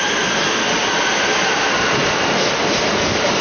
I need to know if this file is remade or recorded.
recorded